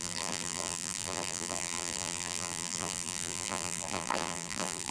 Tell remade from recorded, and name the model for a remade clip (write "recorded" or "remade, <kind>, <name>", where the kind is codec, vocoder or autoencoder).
remade, vocoder, BigVGAN v2